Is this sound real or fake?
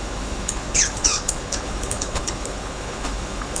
fake